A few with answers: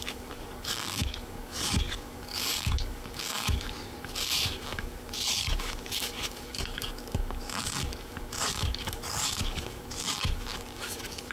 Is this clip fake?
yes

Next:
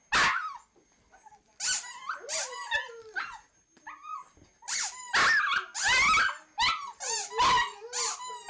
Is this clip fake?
no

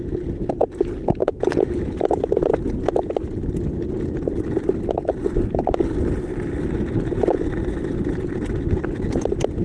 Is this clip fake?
no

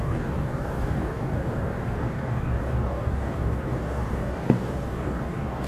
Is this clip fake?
yes